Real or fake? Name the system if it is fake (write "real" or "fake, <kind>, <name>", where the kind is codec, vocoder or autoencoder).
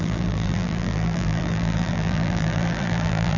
fake, vocoder, BigVGAN v2